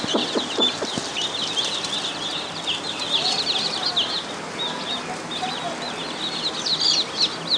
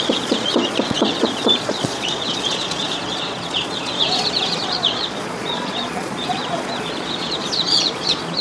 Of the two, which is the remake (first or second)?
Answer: second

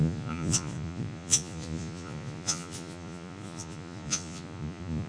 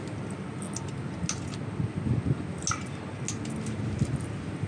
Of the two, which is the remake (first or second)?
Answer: first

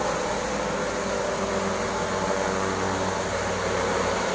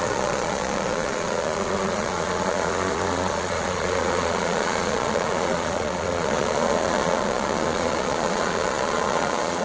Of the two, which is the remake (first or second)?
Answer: second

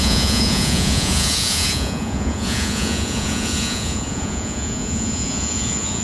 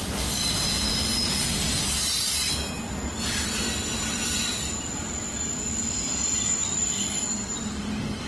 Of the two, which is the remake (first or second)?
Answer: first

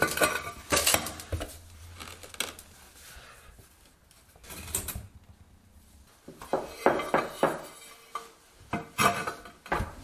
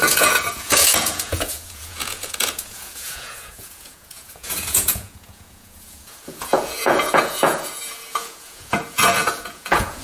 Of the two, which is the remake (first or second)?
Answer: second